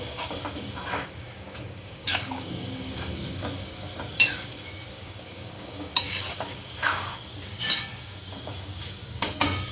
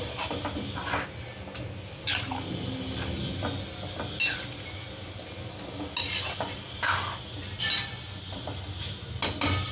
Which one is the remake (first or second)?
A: first